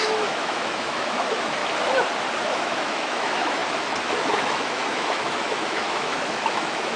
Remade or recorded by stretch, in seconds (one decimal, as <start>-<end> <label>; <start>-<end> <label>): 0.0-1.6 remade; 1.6-2.4 recorded; 2.4-7.0 remade